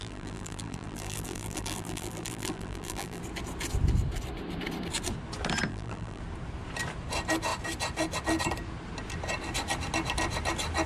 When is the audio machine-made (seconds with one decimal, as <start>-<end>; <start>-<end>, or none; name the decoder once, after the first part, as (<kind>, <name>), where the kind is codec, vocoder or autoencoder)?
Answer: 0.0-3.2 (vocoder, BigVGAN v2); 5.7-6.2